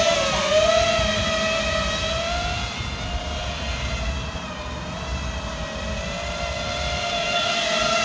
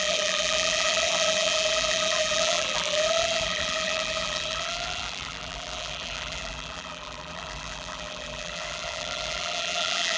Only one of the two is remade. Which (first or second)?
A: second